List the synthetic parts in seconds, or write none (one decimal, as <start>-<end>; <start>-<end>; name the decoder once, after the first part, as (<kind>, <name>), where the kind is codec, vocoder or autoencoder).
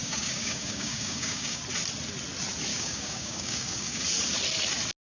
0.0-1.6 (codec, DAC); 2.7-4.0